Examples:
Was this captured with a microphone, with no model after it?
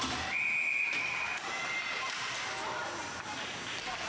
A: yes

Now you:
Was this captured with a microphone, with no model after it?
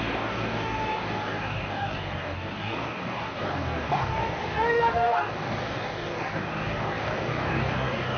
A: no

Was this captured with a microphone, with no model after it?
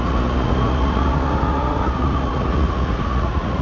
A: no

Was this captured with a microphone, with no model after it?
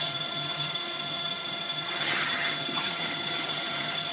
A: no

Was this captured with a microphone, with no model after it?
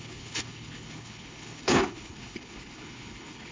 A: no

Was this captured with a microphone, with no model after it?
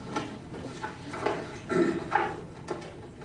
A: yes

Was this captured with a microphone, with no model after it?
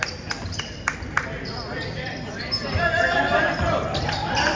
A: no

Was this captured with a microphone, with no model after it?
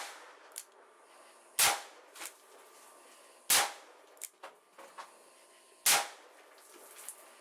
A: yes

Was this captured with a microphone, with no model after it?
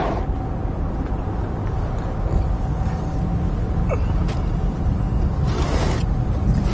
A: yes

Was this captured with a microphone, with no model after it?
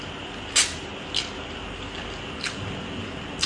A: yes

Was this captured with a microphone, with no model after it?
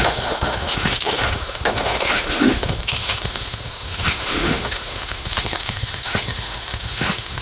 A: no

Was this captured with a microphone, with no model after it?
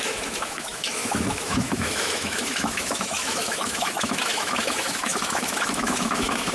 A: no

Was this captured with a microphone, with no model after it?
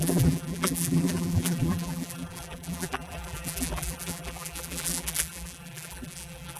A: no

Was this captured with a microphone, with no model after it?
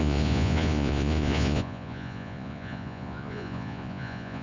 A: no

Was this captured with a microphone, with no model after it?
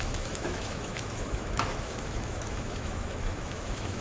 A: no